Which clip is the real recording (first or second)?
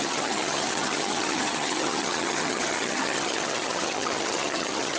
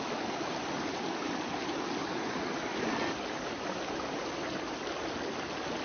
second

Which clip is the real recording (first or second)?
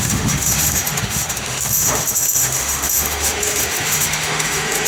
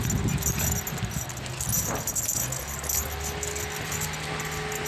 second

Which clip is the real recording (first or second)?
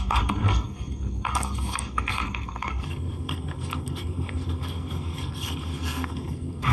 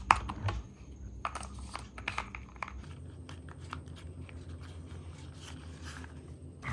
second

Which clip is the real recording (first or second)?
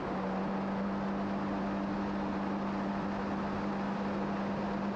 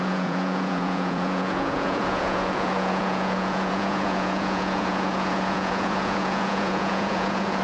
first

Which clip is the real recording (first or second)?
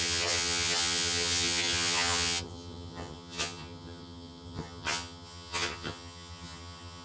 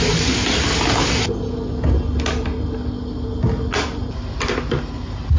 second